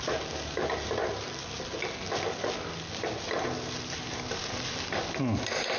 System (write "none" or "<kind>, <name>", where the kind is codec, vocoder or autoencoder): none